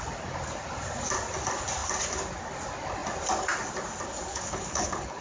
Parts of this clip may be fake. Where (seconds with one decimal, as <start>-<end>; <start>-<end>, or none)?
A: 4.3-5.2